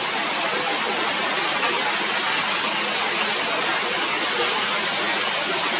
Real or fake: real